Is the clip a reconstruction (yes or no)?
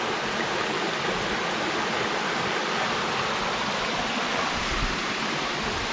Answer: no